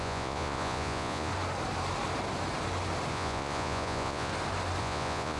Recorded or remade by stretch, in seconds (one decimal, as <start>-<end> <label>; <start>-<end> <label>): 0.0-1.3 remade; 1.3-3.1 recorded; 3.1-4.3 remade; 4.3-4.8 recorded; 4.8-5.4 remade